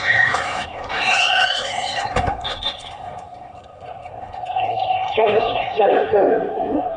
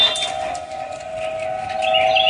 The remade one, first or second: first